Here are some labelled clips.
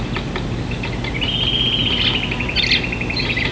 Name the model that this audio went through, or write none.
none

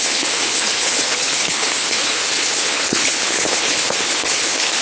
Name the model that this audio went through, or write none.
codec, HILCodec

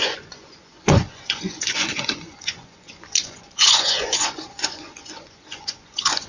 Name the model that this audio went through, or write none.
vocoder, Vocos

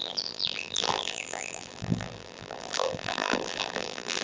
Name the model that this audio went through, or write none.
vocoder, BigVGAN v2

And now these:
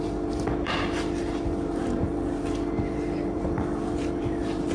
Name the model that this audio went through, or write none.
vocoder, BigVGAN v2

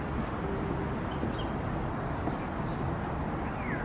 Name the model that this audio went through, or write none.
none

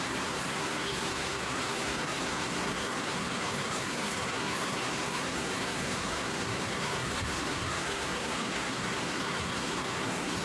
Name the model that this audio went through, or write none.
codec, SNAC